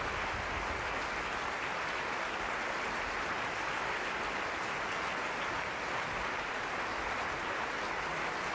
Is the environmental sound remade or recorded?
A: recorded